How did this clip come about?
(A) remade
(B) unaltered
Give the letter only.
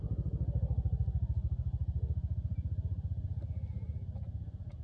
B